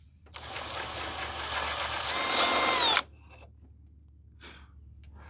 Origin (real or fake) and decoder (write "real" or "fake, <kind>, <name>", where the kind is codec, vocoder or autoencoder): real